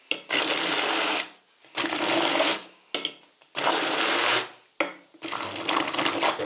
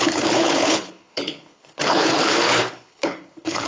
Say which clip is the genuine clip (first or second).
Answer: first